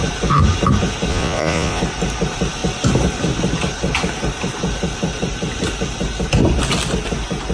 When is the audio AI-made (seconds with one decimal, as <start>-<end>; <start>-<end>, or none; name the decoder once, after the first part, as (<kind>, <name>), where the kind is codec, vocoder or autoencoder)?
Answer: 1.1-1.8 (vocoder, Vocos)